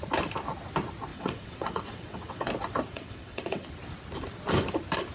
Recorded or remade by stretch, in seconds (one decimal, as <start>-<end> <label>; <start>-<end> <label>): 0.0-1.1 recorded; 1.1-2.5 remade; 2.5-2.9 recorded; 2.9-3.7 remade; 3.7-5.1 recorded